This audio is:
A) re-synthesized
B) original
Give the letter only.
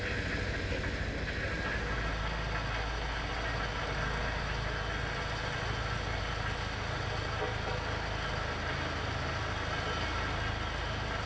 B